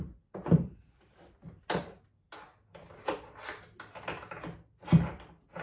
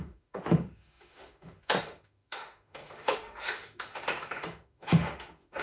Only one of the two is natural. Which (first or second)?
first